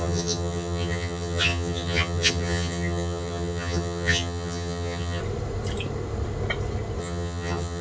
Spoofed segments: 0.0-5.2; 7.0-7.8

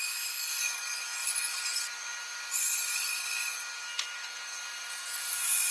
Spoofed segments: 1.2-1.7